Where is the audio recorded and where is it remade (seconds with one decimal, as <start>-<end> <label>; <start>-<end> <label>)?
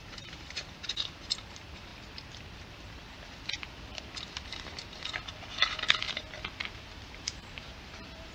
0.0-1.9 remade; 1.9-6.9 recorded; 6.9-8.3 remade